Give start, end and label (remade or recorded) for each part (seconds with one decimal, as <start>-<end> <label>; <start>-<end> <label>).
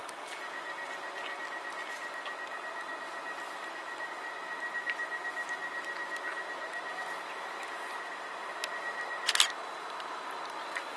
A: 0.0-11.0 recorded